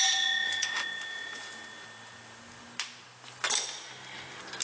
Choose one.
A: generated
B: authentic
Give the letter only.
B